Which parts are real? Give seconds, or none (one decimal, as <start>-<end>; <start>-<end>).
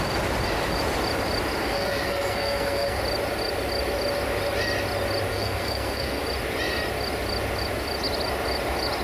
0.0-1.6; 3.0-5.3; 6.2-9.0